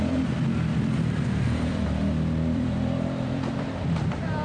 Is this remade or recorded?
remade